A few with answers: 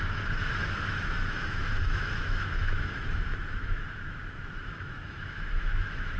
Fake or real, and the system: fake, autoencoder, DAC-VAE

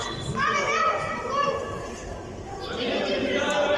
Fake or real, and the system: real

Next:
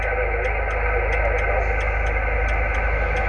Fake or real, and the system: real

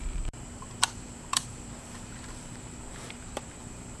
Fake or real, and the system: fake, vocoder, BigVGAN v2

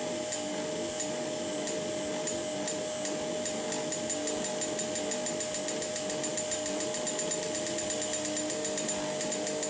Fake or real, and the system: real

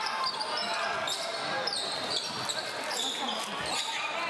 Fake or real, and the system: real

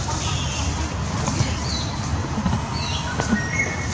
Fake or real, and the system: real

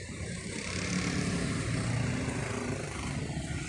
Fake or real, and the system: fake, vocoder, BigVGAN v2